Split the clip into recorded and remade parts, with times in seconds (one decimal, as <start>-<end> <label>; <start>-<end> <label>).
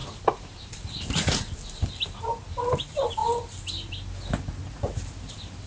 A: 0.0-5.7 recorded